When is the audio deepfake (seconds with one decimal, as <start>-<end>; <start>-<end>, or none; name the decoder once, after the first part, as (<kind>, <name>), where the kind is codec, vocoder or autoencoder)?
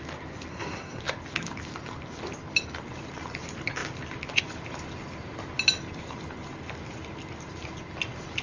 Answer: 0.5-1.0 (codec, SNAC)